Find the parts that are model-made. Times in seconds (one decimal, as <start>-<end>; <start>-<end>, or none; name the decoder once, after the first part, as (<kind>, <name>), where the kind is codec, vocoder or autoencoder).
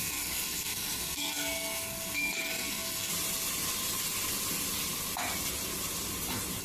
0.0-3.1 (codec, SNAC)